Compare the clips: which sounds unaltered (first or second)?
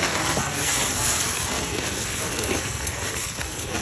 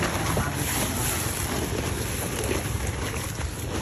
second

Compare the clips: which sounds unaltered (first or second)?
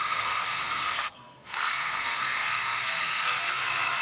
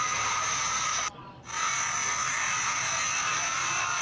second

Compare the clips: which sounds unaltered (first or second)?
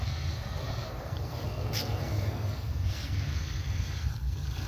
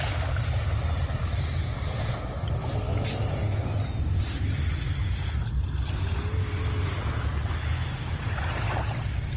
second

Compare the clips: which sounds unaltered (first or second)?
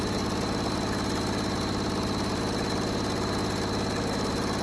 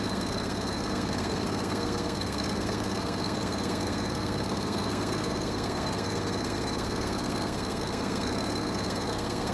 first